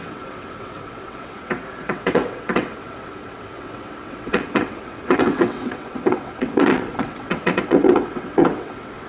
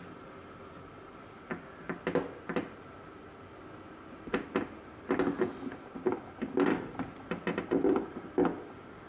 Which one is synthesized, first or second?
first